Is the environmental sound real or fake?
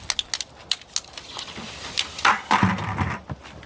real